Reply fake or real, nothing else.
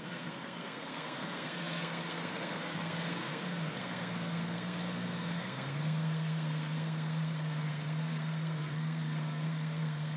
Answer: fake